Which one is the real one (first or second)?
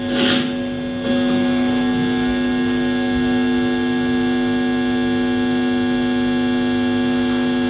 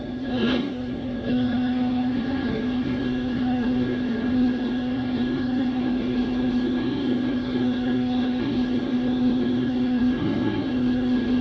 first